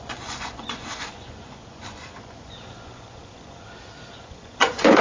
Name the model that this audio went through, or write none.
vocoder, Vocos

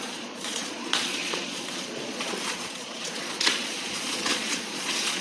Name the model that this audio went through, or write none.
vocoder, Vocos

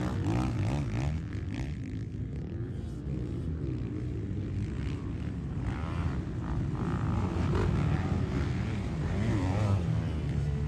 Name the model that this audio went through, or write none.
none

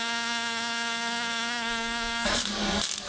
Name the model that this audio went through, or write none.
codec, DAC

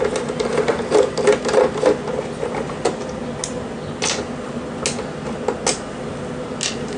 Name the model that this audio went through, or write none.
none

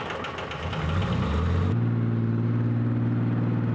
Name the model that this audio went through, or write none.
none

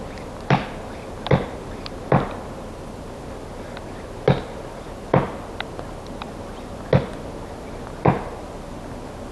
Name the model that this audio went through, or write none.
none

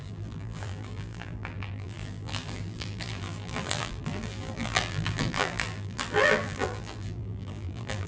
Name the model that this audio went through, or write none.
vocoder, BigVGAN v2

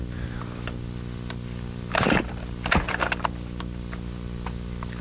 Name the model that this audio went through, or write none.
none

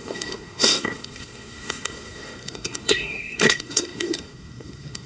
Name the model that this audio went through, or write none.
codec, SNAC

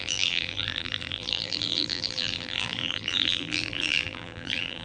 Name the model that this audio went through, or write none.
vocoder, BigVGAN v2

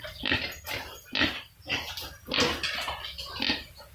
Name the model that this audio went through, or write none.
none